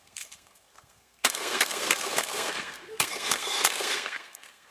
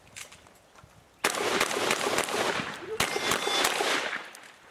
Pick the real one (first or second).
second